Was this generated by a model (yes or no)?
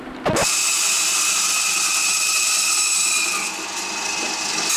no